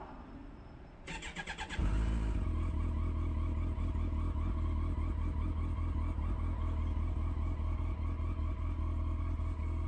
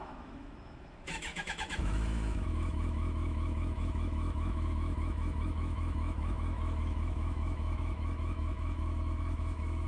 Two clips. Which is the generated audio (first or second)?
second